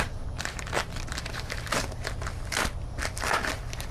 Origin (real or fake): fake